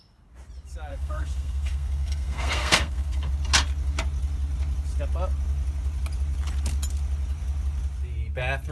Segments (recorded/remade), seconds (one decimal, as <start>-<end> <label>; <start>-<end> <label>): 0.0-0.9 recorded; 0.9-3.3 remade; 3.3-8.7 recorded